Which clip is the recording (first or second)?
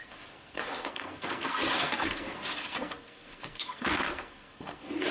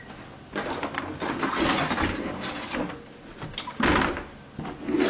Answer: second